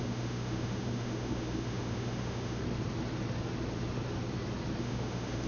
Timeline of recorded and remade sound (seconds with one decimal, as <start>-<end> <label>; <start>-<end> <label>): 0.0-2.6 remade; 2.6-4.8 recorded; 4.8-5.5 remade